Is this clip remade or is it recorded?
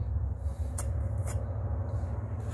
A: recorded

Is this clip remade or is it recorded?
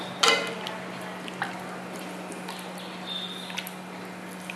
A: recorded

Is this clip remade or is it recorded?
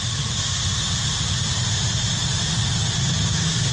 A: recorded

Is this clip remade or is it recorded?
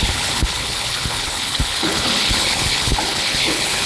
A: remade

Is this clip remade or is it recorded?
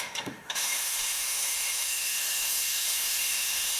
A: remade